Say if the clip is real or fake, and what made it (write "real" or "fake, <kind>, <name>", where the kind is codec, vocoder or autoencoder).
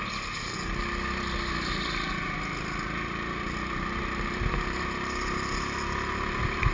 real